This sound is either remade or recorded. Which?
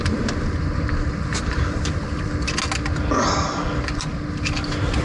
recorded